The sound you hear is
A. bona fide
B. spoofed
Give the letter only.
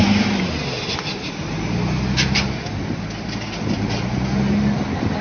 A